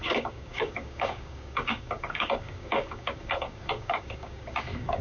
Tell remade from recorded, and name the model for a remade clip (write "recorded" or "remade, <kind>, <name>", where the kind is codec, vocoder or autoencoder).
remade, codec, DAC